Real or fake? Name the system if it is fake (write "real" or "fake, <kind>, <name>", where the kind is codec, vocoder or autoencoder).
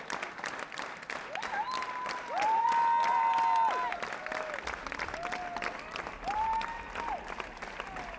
real